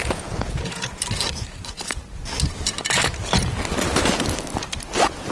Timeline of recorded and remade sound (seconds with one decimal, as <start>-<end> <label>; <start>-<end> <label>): 0.0-1.0 remade; 1.0-5.3 recorded